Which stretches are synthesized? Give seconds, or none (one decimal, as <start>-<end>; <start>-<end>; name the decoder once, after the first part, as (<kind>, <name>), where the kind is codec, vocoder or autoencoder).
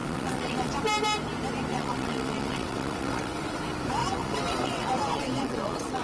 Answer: 0.0-0.7 (vocoder, WaveNeXt); 1.7-3.6; 4.0-6.0